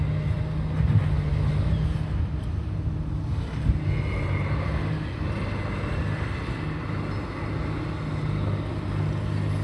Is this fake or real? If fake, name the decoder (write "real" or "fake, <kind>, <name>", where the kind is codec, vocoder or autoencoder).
real